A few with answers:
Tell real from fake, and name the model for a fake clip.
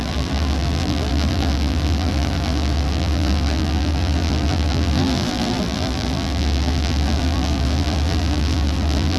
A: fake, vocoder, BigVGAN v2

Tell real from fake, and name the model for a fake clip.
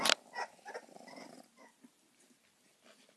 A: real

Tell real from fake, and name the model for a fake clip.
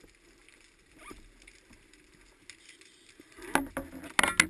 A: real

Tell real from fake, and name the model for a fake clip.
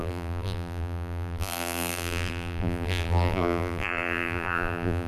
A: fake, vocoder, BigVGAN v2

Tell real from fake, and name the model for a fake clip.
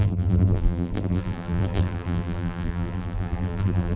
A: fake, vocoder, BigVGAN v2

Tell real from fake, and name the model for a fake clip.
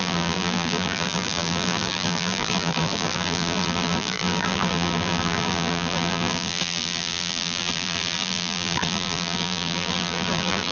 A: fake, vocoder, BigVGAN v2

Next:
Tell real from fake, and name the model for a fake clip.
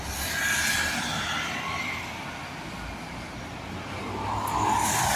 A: real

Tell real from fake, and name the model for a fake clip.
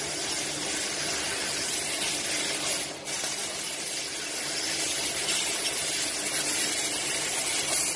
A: real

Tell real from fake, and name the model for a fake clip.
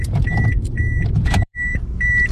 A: fake, vocoder, BigVGAN v2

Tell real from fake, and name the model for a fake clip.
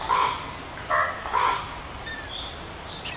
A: real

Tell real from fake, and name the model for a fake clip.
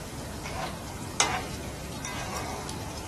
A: real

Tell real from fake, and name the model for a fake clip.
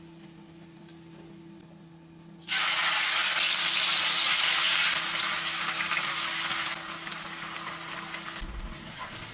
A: real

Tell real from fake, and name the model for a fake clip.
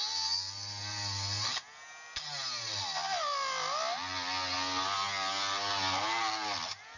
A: real